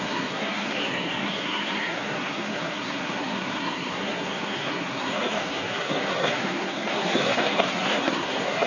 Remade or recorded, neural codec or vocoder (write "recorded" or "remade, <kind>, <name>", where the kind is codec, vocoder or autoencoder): remade, codec, SNAC